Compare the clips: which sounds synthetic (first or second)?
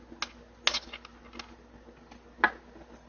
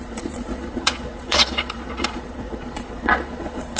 second